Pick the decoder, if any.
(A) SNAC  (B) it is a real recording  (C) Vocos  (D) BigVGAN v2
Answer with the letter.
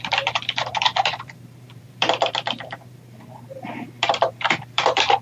D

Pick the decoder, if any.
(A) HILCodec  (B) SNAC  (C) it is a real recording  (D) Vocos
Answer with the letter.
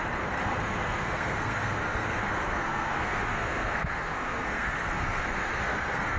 B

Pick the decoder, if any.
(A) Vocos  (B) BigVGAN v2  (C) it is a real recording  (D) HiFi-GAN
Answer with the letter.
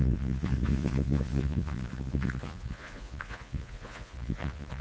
A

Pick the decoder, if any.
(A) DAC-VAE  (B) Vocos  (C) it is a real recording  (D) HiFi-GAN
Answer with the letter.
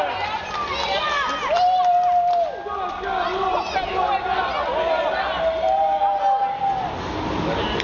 C